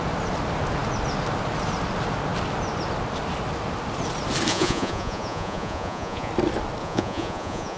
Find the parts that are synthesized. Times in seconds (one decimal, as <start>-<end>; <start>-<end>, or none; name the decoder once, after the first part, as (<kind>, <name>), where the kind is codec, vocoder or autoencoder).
4.5-6.3 (vocoder, Vocos); 6.8-7.8